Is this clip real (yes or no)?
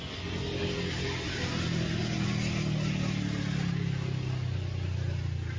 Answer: yes